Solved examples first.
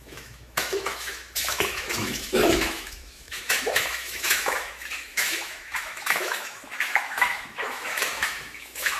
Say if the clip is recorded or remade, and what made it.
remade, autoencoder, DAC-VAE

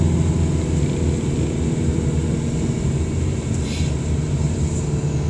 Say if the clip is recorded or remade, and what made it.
recorded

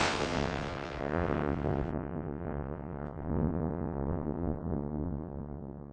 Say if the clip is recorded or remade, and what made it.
remade, vocoder, WaveNeXt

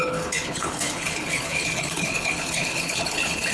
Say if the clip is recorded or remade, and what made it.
remade, codec, HILCodec